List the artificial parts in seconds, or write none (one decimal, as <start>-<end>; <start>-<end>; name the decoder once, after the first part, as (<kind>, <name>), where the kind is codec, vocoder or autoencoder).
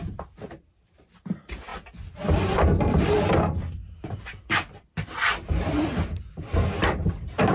0.0-7.5 (vocoder, BigVGAN v2)